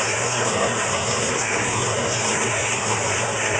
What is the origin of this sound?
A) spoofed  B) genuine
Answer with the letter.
A